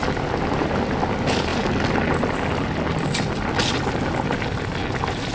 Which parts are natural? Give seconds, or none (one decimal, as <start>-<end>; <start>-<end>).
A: 0.0-5.3